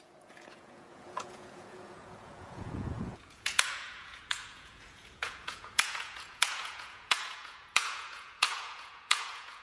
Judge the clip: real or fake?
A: fake